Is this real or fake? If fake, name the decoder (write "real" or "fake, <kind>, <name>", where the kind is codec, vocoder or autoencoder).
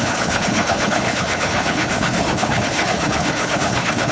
fake, codec, HILCodec